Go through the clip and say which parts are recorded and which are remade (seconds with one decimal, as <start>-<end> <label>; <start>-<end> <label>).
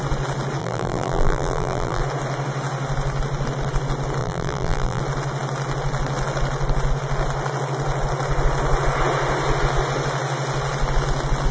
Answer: 0.0-0.6 recorded; 0.6-2.0 remade; 2.0-4.2 recorded; 4.2-5.0 remade; 5.0-11.5 recorded